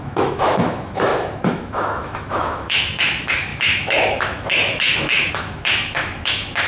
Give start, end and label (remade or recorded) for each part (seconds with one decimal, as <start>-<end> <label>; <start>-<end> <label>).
0.0-6.7 remade